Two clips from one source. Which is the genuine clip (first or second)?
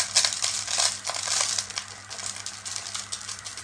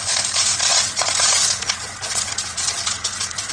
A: first